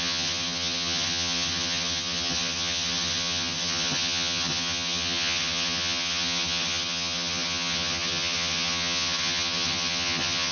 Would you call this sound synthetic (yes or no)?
yes